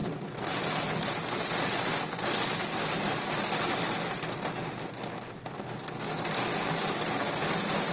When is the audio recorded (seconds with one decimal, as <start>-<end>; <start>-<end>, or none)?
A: 0.0-7.9